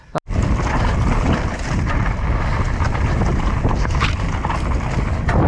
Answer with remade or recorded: recorded